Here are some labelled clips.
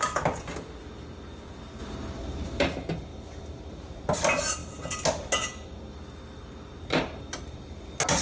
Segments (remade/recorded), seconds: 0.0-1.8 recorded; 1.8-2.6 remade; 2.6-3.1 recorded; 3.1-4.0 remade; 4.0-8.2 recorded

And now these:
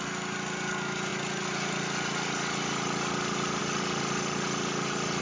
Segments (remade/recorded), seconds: 0.0-5.2 recorded

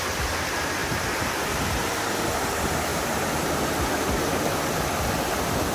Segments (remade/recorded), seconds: 0.0-0.8 recorded; 0.8-2.3 remade; 2.3-2.9 recorded; 2.9-3.5 remade; 3.5-5.7 recorded